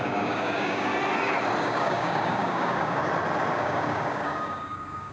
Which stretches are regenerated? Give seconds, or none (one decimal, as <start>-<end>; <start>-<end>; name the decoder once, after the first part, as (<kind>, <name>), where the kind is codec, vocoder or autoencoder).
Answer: 0.0-0.9 (codec, DAC); 1.6-3.0; 3.5-5.1